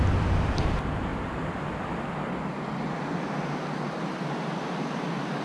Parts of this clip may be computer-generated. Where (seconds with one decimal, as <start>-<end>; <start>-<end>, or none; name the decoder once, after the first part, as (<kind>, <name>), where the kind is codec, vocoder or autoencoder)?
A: none